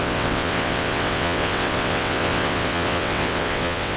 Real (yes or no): no